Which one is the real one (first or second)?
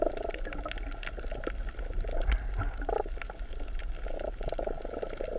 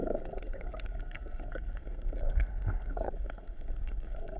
first